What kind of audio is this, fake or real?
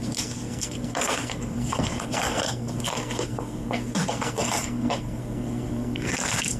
fake